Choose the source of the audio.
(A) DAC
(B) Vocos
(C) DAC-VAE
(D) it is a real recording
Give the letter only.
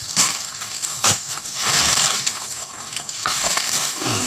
A